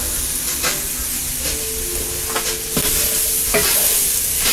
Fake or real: real